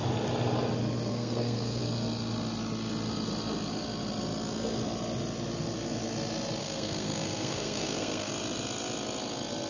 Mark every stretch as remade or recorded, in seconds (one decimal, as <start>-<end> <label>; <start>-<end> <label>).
0.0-1.1 recorded; 1.1-1.8 remade; 1.8-6.6 recorded; 6.6-8.3 remade; 8.3-9.7 recorded